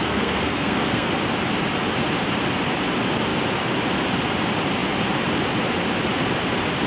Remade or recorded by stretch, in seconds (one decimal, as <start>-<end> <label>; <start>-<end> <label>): 0.0-1.1 remade; 1.1-6.9 recorded